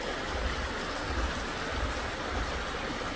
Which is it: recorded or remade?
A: recorded